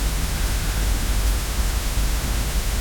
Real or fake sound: fake